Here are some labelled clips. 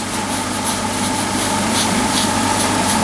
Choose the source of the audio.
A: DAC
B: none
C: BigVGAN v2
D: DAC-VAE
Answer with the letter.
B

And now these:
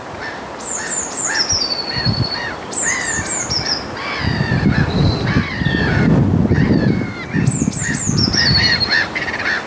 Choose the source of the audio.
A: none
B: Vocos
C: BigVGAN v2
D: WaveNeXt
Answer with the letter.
A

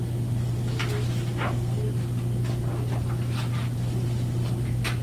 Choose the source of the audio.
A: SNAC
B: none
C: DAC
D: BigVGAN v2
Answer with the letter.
B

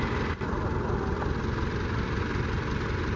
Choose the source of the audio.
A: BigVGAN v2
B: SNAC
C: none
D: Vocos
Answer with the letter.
C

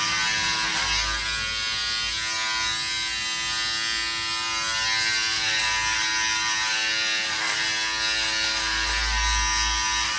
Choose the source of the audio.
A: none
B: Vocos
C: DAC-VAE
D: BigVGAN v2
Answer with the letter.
A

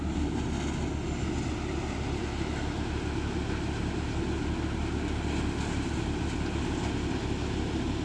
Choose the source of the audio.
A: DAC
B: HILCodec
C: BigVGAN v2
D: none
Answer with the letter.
D